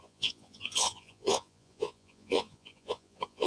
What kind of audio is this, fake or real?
fake